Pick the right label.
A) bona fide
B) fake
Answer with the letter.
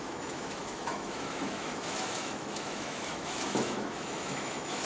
B